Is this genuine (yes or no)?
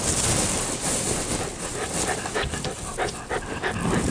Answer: yes